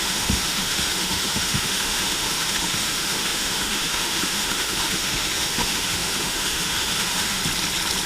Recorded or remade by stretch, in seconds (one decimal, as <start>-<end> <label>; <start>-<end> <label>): 0.0-7.4 remade; 7.4-8.1 recorded

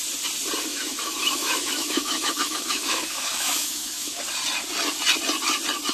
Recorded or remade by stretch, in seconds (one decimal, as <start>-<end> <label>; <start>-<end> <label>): 0.0-0.7 recorded; 0.7-4.2 remade; 4.2-5.9 recorded

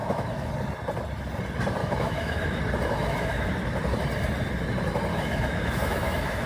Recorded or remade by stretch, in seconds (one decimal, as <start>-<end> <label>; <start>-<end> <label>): 0.0-0.5 remade; 0.5-1.8 recorded; 1.8-2.6 remade; 2.6-3.0 recorded; 3.0-3.5 remade; 3.5-5.1 recorded; 5.1-6.5 remade

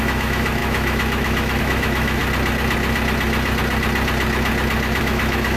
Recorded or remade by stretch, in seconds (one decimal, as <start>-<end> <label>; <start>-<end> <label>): 0.0-2.2 remade; 2.2-5.0 recorded; 5.0-5.6 remade

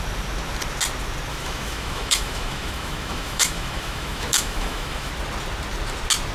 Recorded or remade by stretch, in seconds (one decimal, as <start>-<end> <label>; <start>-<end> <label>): 0.0-1.3 recorded; 1.3-5.1 remade; 5.1-6.3 recorded

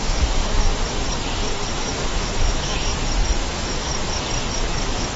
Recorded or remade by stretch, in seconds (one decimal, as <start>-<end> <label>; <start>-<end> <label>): 0.0-0.7 remade; 0.7-1.7 recorded; 1.7-2.9 remade; 2.9-3.5 recorded; 3.5-3.9 remade; 3.9-5.2 recorded